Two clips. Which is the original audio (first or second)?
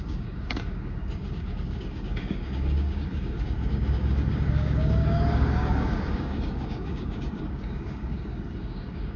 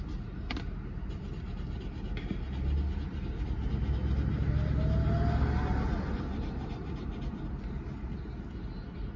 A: second